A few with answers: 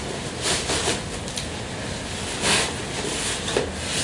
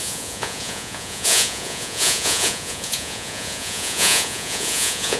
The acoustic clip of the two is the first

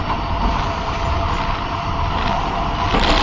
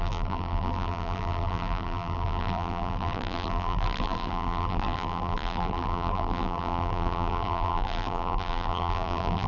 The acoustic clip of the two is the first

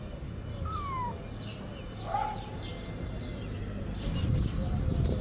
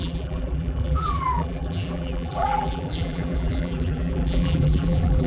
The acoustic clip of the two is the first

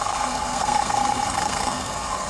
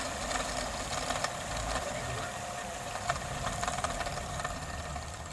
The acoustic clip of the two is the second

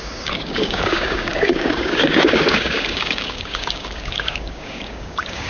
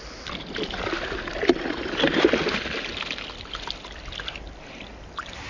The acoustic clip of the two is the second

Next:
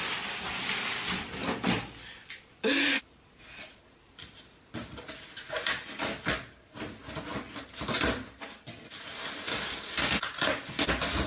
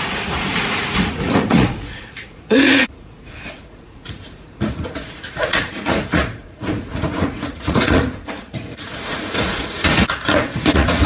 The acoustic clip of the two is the first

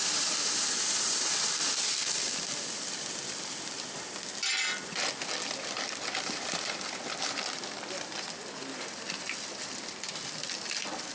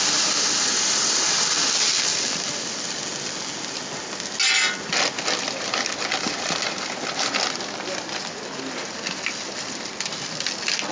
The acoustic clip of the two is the second